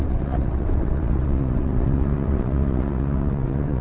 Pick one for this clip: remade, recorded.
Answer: remade